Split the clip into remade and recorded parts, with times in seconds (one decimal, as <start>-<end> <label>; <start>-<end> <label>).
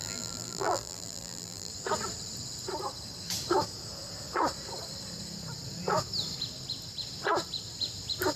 0.0-1.7 remade; 1.7-8.4 recorded